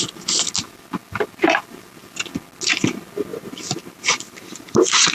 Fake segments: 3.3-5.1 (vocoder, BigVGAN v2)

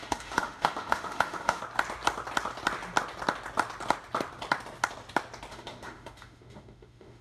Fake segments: 0.0-1.6 (autoencoder, DAC-VAE); 5.5-7.2

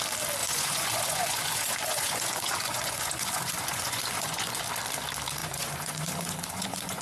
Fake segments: 0.4-4.6 (vocoder, Vocos); 5.4-7.0

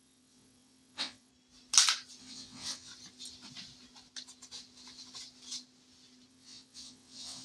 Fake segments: 0.0-1.3 (vocoder, WaveNeXt); 2.2-2.9; 6.3-7.4

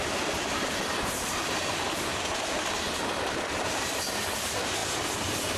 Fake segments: 0.0-2.1 (vocoder, BigVGAN v2); 3.7-5.6

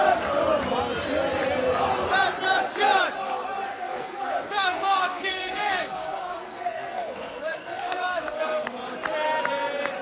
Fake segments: 3.7-8.8 (codec, SNAC)

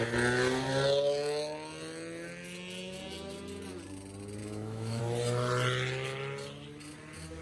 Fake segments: 4.4-5.0 (autoencoder, DAC-VAE)

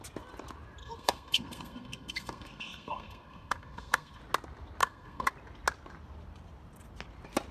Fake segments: 0.8-4.2 (codec, SNAC); 4.8-5.3